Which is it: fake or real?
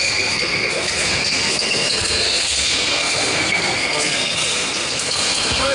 fake